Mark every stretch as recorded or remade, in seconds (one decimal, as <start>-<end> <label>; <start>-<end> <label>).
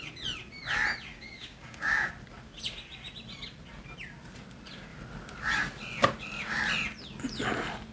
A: 0.0-1.1 recorded; 1.1-2.1 remade; 2.1-7.9 recorded